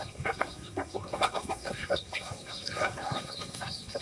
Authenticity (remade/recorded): remade